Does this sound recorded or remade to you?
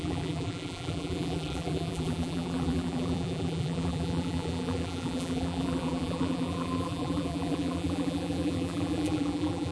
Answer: remade